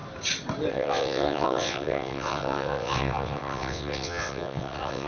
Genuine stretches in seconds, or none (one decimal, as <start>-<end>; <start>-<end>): 0.0-0.7